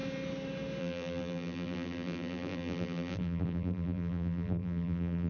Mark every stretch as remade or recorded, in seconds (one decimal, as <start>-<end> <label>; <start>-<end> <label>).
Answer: 0.0-0.8 recorded; 0.8-5.3 remade